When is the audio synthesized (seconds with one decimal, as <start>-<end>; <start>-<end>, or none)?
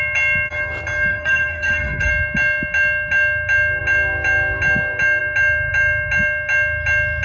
1.1-2.1